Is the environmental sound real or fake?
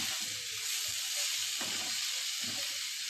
fake